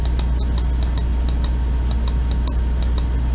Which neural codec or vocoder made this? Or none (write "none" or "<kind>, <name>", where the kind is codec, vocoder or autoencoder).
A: none